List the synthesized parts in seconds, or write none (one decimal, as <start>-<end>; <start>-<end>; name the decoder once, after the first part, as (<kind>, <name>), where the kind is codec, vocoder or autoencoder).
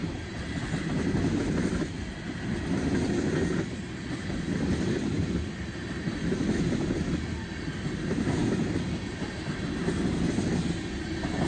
none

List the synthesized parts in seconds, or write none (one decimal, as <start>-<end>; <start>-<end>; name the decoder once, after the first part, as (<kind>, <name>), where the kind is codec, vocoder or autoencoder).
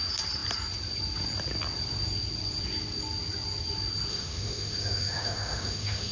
4.1-6.1 (autoencoder, DAC-VAE)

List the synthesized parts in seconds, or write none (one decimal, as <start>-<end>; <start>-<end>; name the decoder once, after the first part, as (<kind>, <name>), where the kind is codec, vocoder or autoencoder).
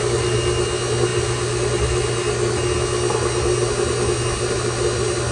none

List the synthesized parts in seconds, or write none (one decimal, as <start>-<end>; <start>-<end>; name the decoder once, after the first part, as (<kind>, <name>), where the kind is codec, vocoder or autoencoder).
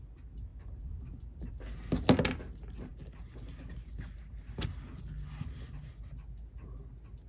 none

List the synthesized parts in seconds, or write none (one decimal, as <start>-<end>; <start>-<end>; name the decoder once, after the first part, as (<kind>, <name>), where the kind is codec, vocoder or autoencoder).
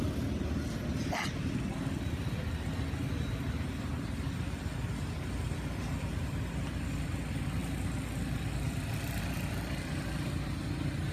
none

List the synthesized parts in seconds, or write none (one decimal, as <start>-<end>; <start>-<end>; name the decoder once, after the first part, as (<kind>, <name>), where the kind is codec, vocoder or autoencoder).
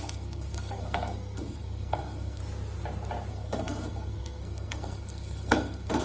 0.0-2.4 (codec, SNAC); 3.3-6.0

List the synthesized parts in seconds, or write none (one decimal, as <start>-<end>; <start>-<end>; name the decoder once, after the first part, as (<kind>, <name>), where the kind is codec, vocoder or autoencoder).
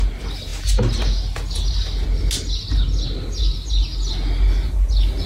none